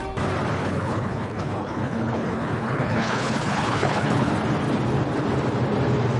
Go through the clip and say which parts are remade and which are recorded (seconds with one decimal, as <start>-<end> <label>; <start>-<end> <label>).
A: 0.0-0.6 recorded; 0.6-4.3 remade; 4.3-6.2 recorded